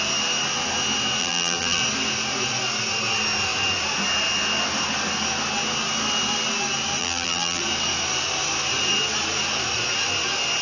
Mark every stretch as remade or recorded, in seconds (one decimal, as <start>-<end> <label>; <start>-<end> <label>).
0.0-1.2 recorded; 1.2-1.8 remade; 1.8-7.0 recorded; 7.0-7.6 remade; 7.6-10.6 recorded